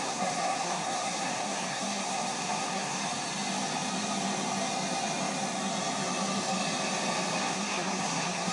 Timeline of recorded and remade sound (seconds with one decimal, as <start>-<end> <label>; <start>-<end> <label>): 0.0-3.0 remade; 3.0-7.4 recorded; 7.4-8.5 remade